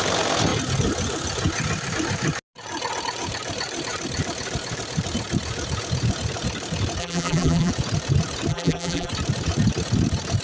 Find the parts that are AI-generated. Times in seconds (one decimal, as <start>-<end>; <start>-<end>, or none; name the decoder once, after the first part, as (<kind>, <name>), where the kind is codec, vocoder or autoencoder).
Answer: 7.0-7.7 (vocoder, BigVGAN v2); 8.5-9.1